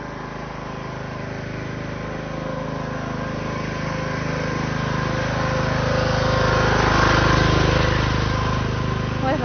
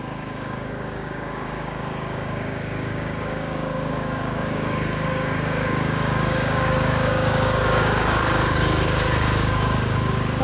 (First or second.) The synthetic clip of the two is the second